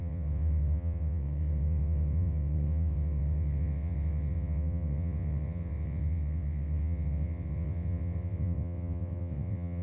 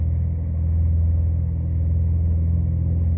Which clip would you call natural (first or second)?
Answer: second